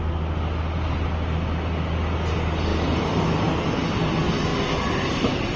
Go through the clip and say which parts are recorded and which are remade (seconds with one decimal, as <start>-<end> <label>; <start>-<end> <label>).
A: 0.0-5.6 recorded